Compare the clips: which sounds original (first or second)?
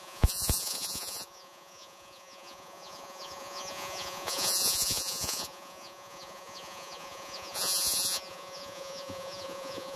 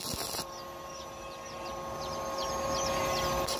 second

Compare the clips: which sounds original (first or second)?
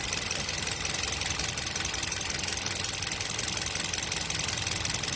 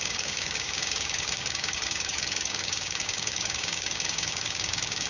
first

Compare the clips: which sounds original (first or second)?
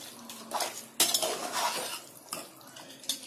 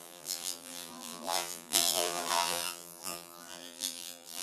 first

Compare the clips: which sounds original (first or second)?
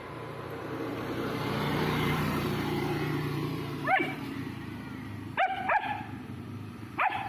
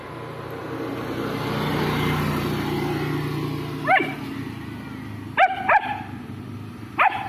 second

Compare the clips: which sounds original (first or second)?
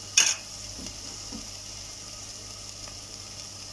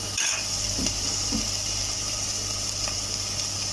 first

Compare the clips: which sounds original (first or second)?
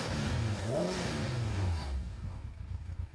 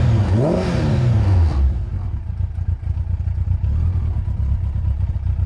second